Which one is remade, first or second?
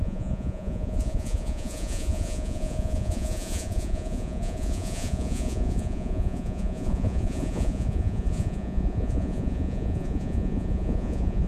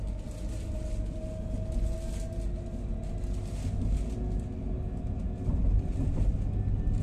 first